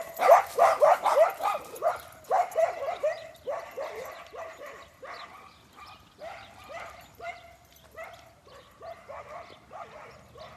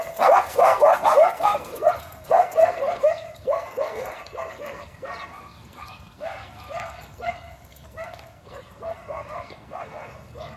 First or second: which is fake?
second